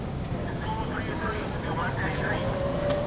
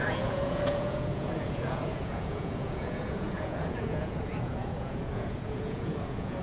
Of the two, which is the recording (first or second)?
first